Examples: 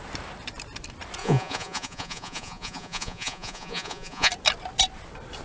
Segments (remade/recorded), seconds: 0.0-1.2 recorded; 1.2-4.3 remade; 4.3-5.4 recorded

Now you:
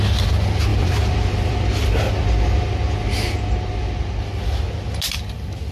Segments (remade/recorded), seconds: 0.0-0.7 recorded; 0.7-2.1 remade; 2.1-5.7 recorded

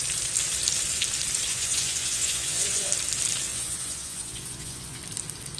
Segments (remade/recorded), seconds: 0.0-1.5 recorded; 1.5-2.9 remade; 2.9-3.5 recorded; 3.5-5.0 remade; 5.0-5.6 recorded

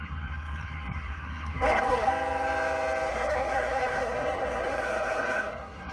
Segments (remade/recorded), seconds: 0.0-2.1 remade; 2.1-3.1 recorded; 3.1-5.9 remade

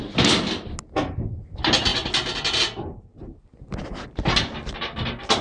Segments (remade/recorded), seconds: 0.0-5.4 recorded

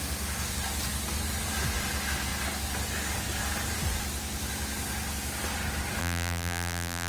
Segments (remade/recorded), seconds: 0.0-6.0 recorded; 6.0-7.1 remade